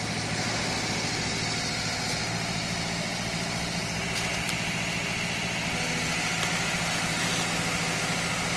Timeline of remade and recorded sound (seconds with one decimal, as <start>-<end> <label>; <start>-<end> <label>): 0.0-8.6 recorded